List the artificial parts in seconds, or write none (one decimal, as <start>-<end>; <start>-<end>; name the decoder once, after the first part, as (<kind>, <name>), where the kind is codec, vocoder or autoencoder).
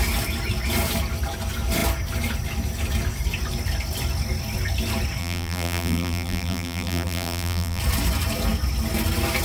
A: 5.2-7.8 (vocoder, BigVGAN v2)